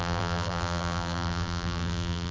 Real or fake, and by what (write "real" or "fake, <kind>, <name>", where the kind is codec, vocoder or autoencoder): fake, vocoder, BigVGAN v2